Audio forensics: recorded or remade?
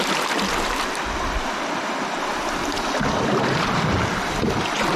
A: recorded